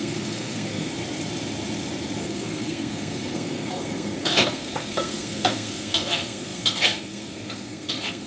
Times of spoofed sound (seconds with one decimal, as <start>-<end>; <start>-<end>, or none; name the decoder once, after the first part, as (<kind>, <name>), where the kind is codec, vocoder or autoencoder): 0.0-0.9 (codec, SNAC); 2.2-8.3